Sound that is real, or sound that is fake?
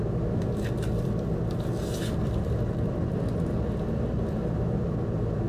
real